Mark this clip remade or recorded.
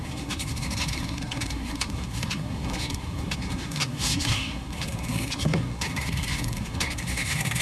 remade